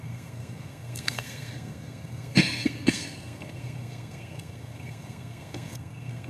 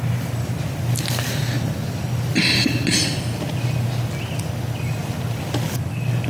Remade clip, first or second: first